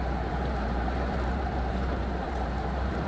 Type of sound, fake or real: fake